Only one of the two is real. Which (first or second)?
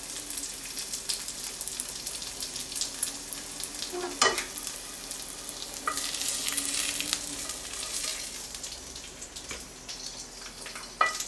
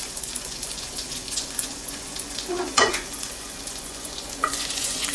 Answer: first